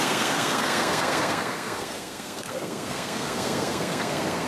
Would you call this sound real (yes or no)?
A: no